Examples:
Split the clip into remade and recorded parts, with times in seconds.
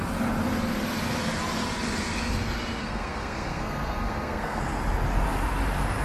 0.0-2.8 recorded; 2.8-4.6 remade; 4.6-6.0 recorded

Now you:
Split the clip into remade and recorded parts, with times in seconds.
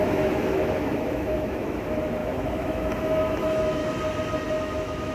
0.0-3.8 remade; 3.8-4.5 recorded; 4.5-5.1 remade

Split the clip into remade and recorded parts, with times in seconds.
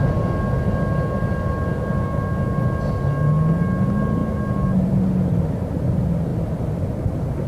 0.0-7.5 recorded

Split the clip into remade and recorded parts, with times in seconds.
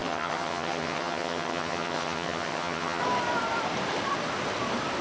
0.0-3.0 remade; 3.0-5.0 recorded